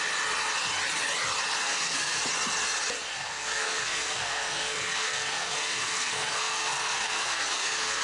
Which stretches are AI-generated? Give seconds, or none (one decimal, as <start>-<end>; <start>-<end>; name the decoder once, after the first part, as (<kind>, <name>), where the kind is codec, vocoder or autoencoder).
1.6-2.2 (codec, SNAC); 3.1-8.0